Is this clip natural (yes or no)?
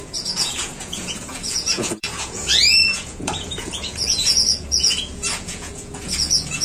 no